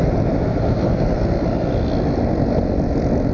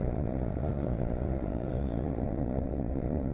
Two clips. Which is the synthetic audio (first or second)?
second